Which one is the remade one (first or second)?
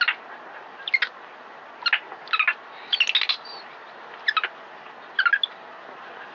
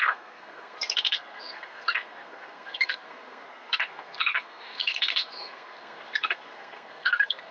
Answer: second